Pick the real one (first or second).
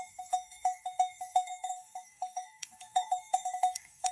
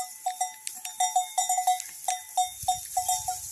second